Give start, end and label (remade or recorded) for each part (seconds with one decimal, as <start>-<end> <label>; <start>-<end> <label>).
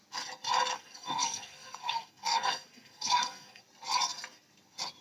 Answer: 0.0-0.7 recorded; 0.7-3.6 remade; 3.6-5.0 recorded